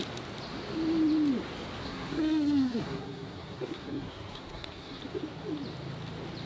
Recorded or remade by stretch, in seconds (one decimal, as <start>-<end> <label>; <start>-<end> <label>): 0.0-1.8 recorded; 1.8-5.0 remade; 5.0-6.5 recorded